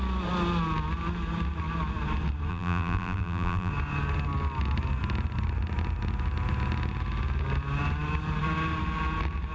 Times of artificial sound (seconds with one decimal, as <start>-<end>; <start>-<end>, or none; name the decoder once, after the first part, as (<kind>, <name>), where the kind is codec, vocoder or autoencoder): 2.5-3.7 (vocoder, BigVGAN v2)